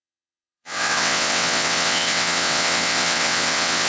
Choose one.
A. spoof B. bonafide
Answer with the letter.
A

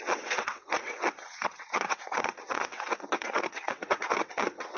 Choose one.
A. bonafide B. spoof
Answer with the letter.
B